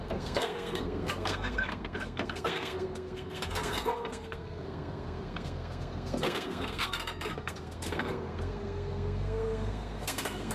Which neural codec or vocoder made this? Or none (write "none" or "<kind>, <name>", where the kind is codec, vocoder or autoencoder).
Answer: codec, SNAC